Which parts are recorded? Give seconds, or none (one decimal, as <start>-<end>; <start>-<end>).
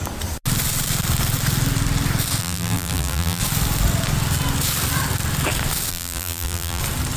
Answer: 0.0-2.4; 3.4-5.9; 6.8-7.2